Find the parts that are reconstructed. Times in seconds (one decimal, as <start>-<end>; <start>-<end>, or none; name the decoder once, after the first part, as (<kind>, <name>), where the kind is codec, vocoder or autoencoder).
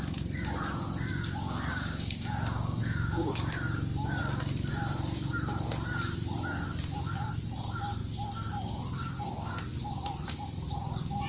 1.1-4.2 (codec, DAC)